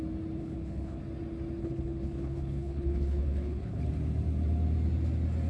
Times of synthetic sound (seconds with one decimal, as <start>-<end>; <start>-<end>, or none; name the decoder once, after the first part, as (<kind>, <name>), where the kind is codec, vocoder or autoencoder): 0.4-1.0 (codec, HILCodec); 1.6-3.8